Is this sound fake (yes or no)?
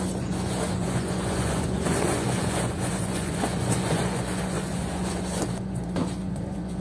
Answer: yes